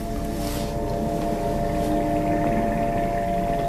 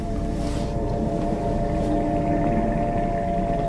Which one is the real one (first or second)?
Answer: first